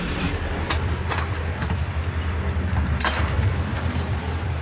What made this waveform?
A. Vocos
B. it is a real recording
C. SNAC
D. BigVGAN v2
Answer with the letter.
B